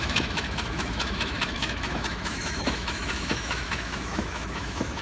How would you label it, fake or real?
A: fake